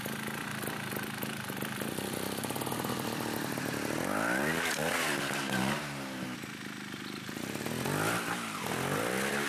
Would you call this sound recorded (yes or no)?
yes